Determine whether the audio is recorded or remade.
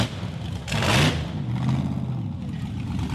recorded